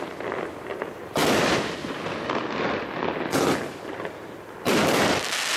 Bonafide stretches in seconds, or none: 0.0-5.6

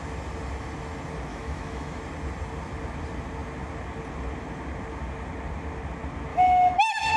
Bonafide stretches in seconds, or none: 0.0-1.3; 2.0-6.3

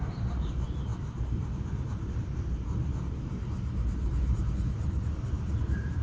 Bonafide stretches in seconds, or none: 0.9-4.5

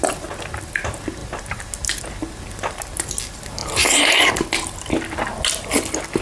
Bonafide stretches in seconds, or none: 0.0-6.2

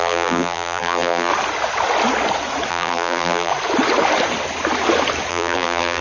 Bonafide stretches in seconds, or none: 1.3-2.7; 3.5-5.3

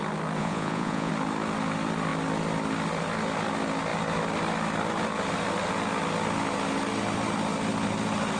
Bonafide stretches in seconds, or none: 0.0-0.4; 1.1-8.4

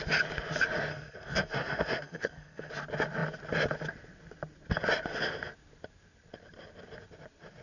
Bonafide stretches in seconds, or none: 0.0-0.9; 2.7-7.6